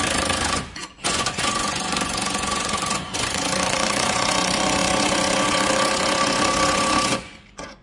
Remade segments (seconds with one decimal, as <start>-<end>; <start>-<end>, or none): 0.0-7.8